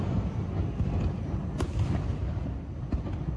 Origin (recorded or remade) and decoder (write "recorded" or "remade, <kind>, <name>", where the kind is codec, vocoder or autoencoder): recorded